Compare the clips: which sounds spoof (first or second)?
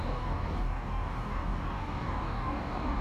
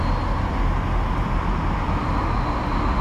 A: first